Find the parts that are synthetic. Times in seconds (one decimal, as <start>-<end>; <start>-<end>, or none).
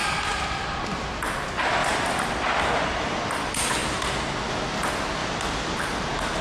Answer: 0.0-1.1; 1.8-2.6; 5.2-5.8